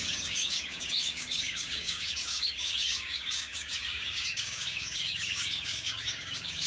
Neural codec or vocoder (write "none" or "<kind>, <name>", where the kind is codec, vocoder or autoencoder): codec, DAC